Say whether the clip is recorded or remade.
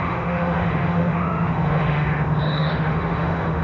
remade